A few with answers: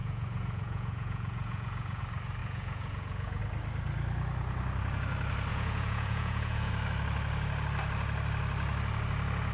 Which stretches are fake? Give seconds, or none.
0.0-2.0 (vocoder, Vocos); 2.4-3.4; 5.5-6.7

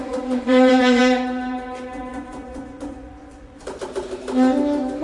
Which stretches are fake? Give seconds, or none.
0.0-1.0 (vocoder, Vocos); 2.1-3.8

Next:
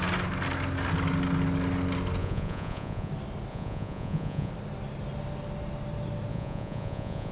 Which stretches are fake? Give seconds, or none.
2.2-3.1 (vocoder, Vocos); 3.5-4.5; 6.3-7.3

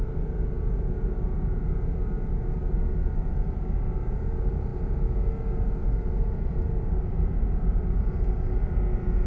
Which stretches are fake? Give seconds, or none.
none

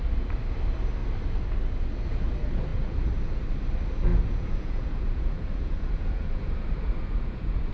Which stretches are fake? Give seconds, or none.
2.7-3.4 (vocoder, Vocos); 4.1-7.7

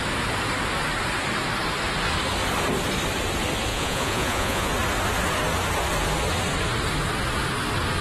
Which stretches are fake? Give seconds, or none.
3.7-4.7 (vocoder, Vocos)

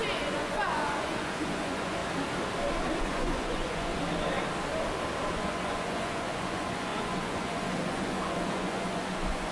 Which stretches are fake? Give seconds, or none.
0.0-2.0 (vocoder, Vocos); 3.0-3.9; 5.3-9.5

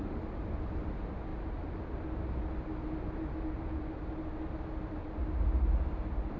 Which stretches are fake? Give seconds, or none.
none